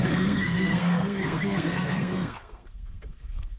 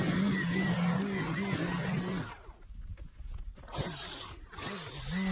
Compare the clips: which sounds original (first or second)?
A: second